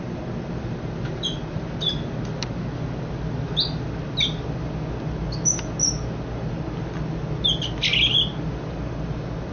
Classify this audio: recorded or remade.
recorded